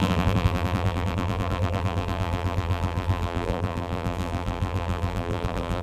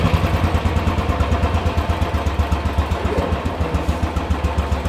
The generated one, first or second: first